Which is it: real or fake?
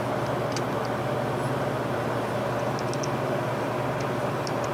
real